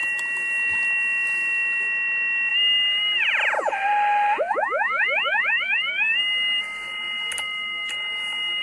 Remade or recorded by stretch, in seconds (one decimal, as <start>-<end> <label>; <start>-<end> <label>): 0.0-8.6 recorded